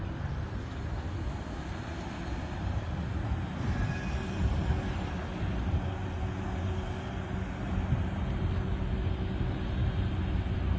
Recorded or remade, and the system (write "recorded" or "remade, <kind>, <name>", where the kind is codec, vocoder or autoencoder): recorded